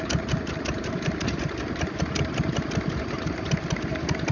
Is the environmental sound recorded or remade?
remade